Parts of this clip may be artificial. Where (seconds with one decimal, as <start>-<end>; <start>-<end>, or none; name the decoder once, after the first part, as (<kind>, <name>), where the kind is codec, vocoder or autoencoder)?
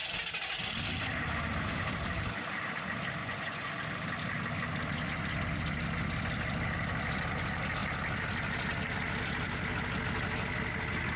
3.2-3.7 (vocoder, Vocos)